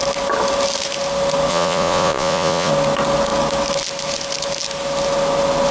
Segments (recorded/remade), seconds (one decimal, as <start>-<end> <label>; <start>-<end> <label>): 0.0-1.5 recorded; 1.5-2.7 remade; 2.7-5.7 recorded